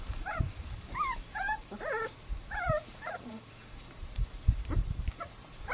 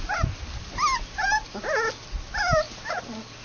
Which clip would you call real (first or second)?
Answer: second